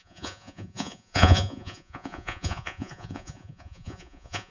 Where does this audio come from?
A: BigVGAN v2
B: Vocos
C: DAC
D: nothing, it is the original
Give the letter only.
B